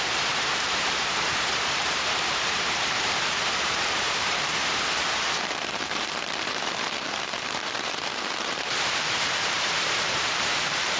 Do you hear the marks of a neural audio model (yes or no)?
yes